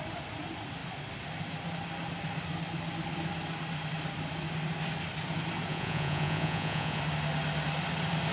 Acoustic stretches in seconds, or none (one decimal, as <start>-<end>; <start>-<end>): 0.0-5.7; 7.0-8.3